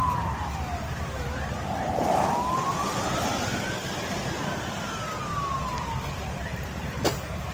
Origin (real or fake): real